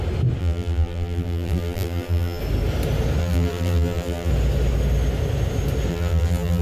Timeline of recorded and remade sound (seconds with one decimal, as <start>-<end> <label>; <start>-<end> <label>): 0.0-0.4 recorded; 0.4-2.4 remade; 2.4-3.2 recorded; 3.2-4.3 remade; 4.3-5.9 recorded; 5.9-6.6 remade